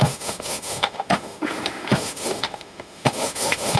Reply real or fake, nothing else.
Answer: fake